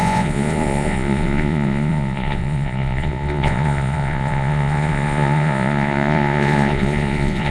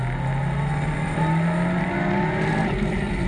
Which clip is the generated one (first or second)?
first